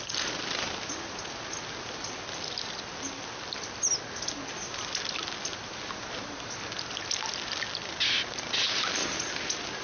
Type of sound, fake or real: real